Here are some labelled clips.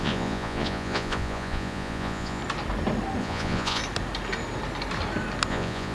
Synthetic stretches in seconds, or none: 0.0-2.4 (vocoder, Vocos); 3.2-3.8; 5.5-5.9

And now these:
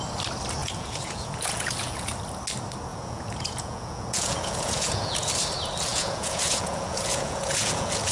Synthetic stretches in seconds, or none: 0.6-2.1 (vocoder, Vocos); 2.9-5.3; 5.9-8.1

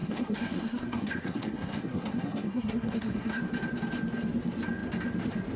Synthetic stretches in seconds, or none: 0.0-3.4 (codec, SNAC)

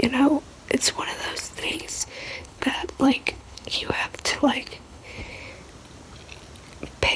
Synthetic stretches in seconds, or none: 1.6-5.5 (codec, HILCodec)